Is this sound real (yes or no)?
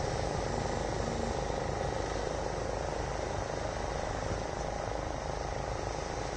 yes